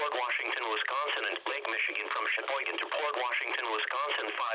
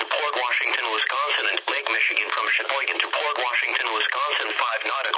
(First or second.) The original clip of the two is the first